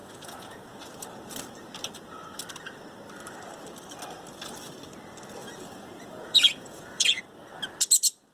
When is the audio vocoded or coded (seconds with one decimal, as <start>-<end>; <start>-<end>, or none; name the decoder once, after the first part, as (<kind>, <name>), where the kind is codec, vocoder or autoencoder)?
0.0-0.9 (vocoder, Vocos); 5.4-7.2